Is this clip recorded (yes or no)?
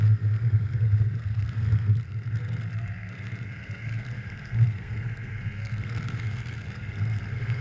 no